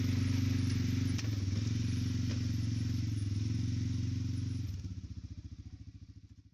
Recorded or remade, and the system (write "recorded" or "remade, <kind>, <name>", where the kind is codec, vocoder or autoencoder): recorded